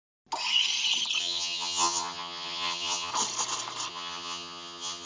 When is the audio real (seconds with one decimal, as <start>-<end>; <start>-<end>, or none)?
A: 0.0-1.2; 3.1-3.9